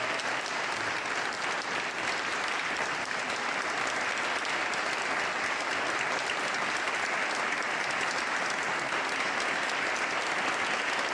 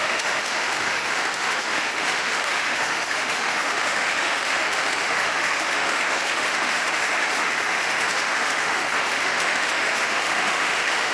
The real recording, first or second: first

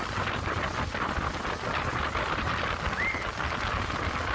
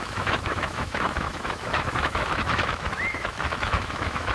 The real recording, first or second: first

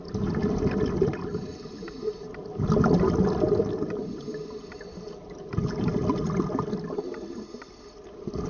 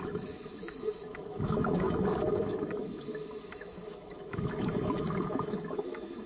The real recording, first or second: first